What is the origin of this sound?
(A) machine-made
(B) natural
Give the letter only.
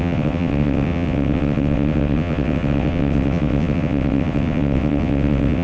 A